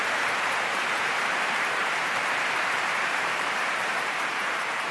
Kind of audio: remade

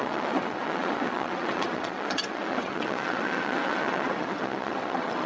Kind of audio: remade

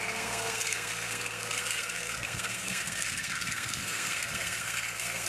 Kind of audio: remade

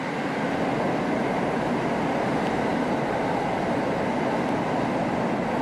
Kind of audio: recorded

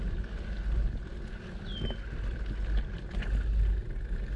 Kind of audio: recorded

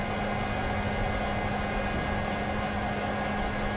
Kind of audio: recorded